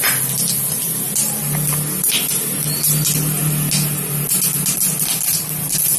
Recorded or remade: recorded